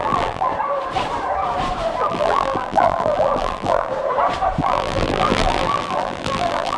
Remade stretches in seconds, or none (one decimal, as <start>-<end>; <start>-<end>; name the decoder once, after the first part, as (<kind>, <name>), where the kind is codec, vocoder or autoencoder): 0.0-0.5 (vocoder, BigVGAN v2); 2.0-3.9; 4.6-6.8